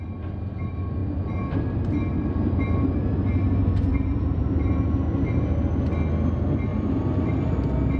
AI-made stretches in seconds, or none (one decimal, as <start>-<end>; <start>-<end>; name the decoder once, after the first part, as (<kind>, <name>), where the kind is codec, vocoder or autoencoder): 3.9-4.7 (vocoder, BigVGAN v2); 6.7-7.3